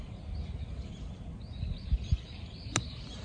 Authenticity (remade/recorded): recorded